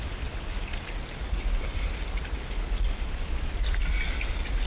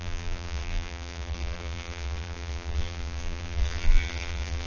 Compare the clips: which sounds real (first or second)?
first